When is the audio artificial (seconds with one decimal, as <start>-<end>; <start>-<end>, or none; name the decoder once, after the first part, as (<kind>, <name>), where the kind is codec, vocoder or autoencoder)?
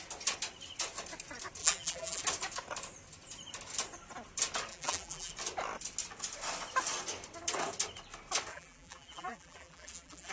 1.6-2.2 (vocoder, BigVGAN v2); 4.7-5.3; 8.5-10.3